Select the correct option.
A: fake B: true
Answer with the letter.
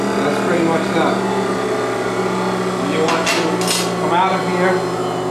B